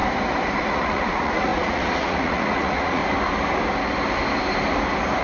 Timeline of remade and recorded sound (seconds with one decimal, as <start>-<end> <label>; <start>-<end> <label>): 0.0-0.6 recorded; 0.6-3.0 remade; 3.0-5.2 recorded